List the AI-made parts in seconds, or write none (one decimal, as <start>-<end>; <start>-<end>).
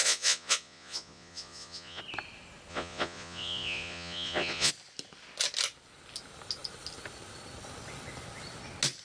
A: 0.0-2.0; 2.7-4.7